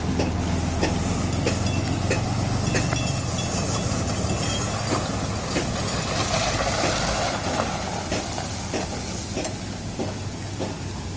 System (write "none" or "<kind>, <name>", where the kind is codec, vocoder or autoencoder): none